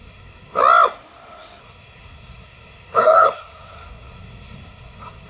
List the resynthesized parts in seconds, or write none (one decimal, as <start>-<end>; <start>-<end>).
0.0-0.6; 1.6-5.3